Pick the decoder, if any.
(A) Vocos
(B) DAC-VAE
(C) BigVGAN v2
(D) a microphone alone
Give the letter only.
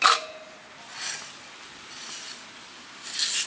D